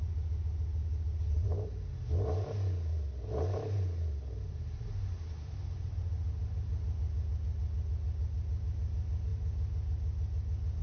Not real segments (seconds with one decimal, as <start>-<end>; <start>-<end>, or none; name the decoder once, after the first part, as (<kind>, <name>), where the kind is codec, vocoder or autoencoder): 2.9-4.9 (vocoder, BigVGAN v2)